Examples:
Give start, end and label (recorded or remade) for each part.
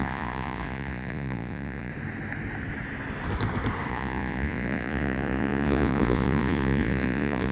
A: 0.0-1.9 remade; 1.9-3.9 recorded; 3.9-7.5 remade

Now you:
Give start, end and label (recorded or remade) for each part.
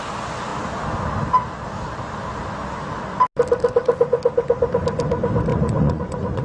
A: 0.0-5.5 recorded; 5.5-6.4 remade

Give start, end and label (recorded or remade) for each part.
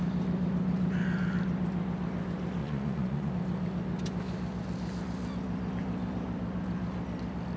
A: 0.0-2.6 recorded; 2.6-3.3 remade; 3.3-7.6 recorded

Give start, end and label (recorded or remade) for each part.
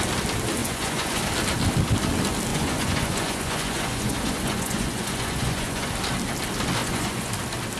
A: 0.0-0.6 recorded; 0.6-1.2 remade; 1.2-2.5 recorded; 2.5-5.9 remade; 5.9-6.8 recorded; 6.8-7.3 remade; 7.3-7.8 recorded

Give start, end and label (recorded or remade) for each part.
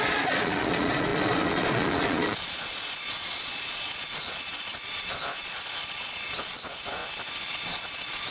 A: 0.0-7.0 remade; 7.0-7.5 recorded; 7.5-8.3 remade